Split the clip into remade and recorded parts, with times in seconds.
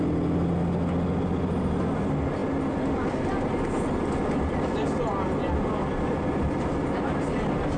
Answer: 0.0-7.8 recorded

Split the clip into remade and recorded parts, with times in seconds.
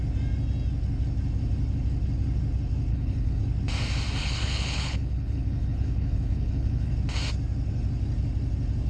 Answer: 0.0-2.9 recorded; 2.9-3.4 remade; 3.4-4.2 recorded; 4.2-6.9 remade; 6.9-8.9 recorded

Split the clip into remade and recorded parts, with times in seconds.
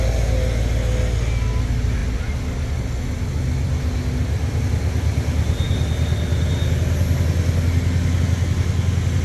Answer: 0.0-9.2 recorded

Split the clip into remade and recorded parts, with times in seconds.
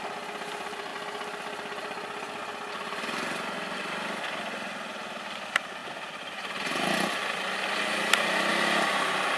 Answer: 0.0-9.4 recorded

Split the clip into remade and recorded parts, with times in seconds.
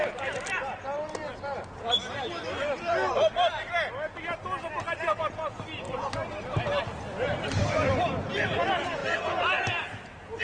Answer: 0.0-10.4 recorded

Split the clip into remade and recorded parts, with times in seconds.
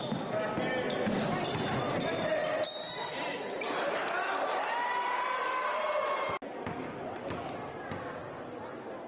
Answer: 0.0-9.1 recorded